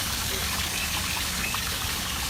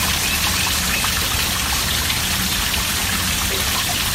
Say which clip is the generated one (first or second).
first